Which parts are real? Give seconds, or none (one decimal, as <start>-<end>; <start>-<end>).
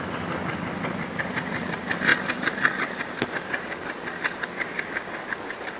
0.0-5.8